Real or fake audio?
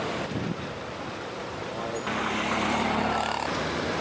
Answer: fake